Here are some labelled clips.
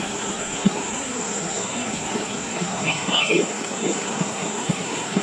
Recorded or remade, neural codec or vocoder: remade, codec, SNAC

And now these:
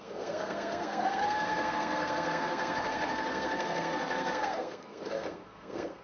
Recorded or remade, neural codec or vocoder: remade, codec, SNAC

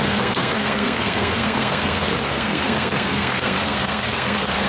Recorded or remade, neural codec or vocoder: remade, codec, SNAC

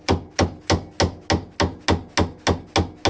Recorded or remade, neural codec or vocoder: recorded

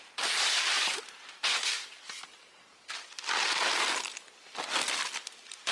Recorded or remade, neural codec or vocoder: recorded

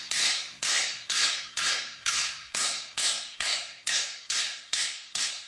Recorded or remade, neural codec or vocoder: remade, codec, SNAC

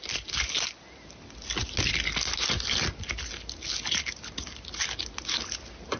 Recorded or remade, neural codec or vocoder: recorded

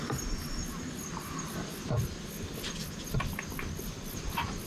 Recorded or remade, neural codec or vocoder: recorded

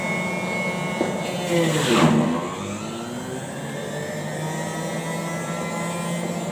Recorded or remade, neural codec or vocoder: recorded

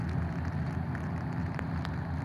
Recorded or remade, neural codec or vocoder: recorded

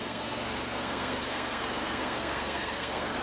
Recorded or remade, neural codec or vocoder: remade, codec, SNAC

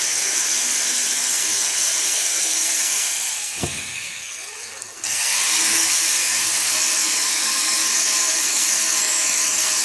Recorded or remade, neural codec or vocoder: remade, codec, SNAC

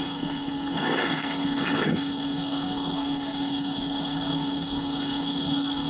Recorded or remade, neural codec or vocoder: remade, codec, SNAC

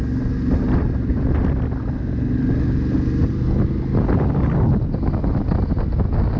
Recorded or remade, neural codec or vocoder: recorded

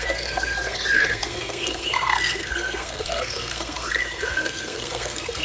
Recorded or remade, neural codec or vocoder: remade, codec, SNAC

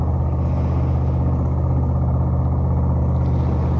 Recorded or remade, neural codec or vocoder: recorded